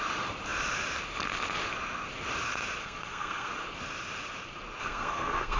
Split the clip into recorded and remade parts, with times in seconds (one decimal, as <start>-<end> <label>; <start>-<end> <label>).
0.0-2.8 recorded; 2.8-3.5 remade; 3.5-4.8 recorded; 4.8-5.6 remade